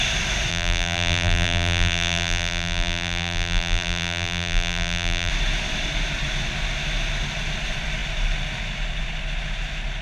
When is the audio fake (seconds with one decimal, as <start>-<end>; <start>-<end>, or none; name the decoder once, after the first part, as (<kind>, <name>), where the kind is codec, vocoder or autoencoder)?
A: 0.5-5.3 (vocoder, BigVGAN v2)